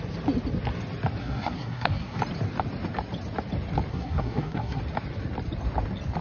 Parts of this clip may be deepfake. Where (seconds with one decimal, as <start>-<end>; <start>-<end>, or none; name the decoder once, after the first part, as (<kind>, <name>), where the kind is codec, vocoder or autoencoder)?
1.2-2.2 (codec, SNAC); 3.9-4.8